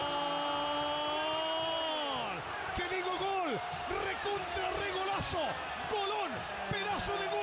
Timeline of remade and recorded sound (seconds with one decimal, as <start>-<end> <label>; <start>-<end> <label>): 0.0-7.4 recorded